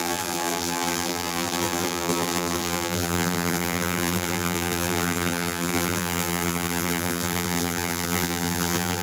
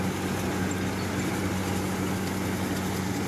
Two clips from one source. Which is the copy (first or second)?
first